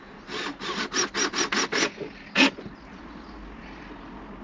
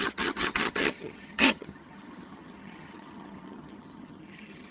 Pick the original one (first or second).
first